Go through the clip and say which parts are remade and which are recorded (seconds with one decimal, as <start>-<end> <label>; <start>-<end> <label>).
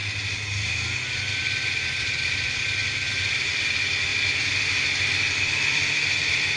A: 0.0-2.0 recorded; 2.0-2.8 remade; 2.8-3.3 recorded; 3.3-4.1 remade; 4.1-5.0 recorded; 5.0-6.6 remade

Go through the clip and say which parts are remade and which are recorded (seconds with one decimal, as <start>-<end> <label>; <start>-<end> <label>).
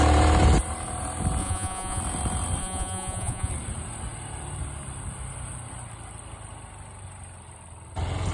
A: 0.0-1.4 recorded; 1.4-2.0 remade; 2.0-2.6 recorded; 2.6-3.5 remade; 3.5-8.3 recorded